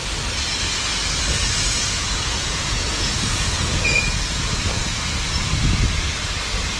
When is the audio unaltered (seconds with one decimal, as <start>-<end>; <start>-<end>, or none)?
0.0-1.4; 5.5-6.8